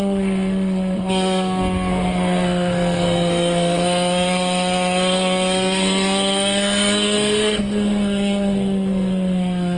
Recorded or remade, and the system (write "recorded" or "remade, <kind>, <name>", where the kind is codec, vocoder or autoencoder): remade, codec, SNAC